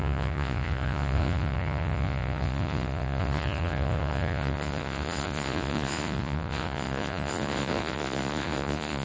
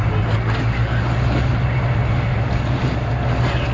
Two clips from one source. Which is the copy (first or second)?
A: first